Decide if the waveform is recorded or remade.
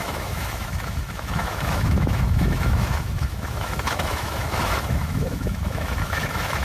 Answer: remade